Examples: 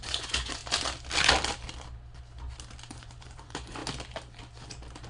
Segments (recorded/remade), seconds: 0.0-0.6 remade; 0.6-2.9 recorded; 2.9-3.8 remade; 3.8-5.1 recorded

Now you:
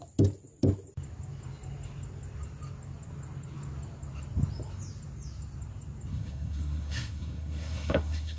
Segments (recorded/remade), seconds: 0.0-6.1 recorded; 6.1-8.4 remade